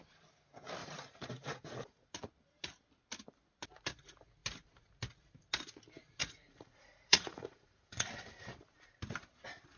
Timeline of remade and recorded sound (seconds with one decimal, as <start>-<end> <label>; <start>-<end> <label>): 0.0-0.8 recorded; 0.8-2.1 remade; 2.1-6.2 recorded; 6.2-8.1 remade; 8.1-9.8 recorded